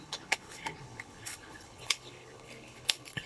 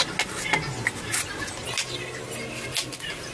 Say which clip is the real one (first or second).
second